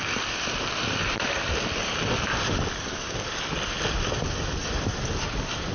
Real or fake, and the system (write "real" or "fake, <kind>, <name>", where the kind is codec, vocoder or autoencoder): fake, vocoder, BigVGAN v2